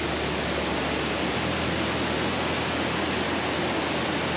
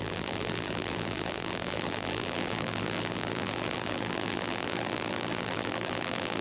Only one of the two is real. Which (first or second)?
first